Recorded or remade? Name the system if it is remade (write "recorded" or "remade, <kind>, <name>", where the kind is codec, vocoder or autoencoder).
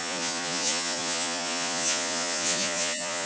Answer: remade, vocoder, Vocos